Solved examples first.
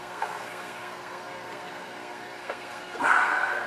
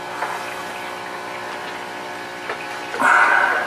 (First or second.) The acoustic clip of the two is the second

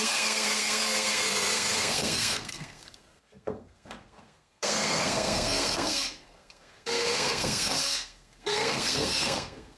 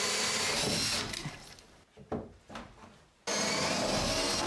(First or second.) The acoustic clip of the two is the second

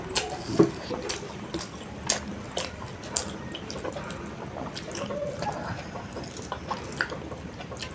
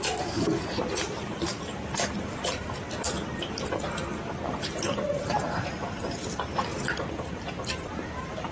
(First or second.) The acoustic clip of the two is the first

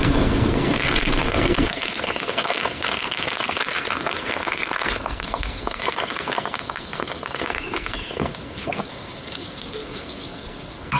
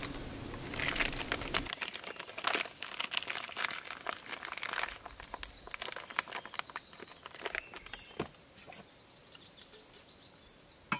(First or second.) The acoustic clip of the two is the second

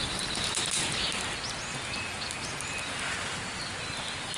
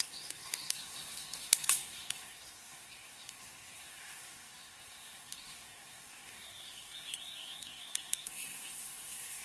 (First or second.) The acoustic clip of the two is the first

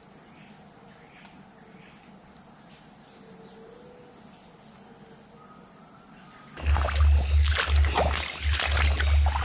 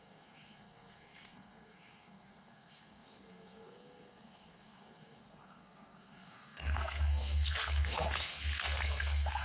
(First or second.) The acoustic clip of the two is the first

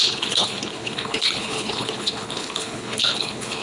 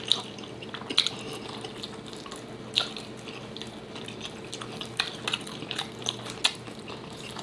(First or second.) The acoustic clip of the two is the second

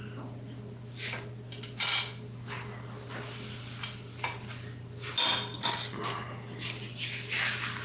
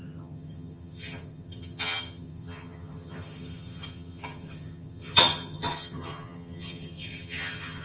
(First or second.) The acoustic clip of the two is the first